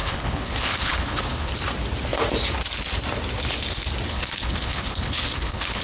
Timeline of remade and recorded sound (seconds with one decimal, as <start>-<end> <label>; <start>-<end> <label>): 0.0-1.5 remade; 1.5-4.1 recorded; 4.1-5.8 remade